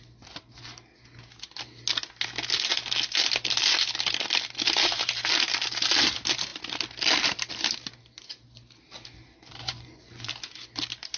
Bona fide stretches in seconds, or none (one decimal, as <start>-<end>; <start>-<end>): 0.0-9.6; 10.3-11.2